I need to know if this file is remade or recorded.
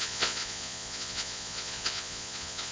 remade